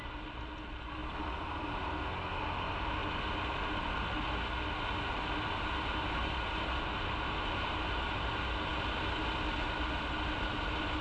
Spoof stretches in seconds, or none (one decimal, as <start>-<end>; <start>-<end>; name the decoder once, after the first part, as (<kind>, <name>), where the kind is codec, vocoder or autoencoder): none